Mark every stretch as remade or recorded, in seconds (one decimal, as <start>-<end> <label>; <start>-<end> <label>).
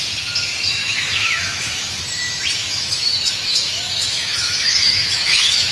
0.0-0.8 recorded; 0.8-2.0 remade; 2.0-2.6 recorded; 2.6-5.7 remade